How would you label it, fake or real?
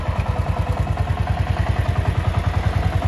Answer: real